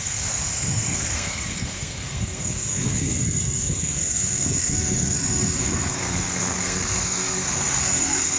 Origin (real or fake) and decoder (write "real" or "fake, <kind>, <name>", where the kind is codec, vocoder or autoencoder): fake, codec, SNAC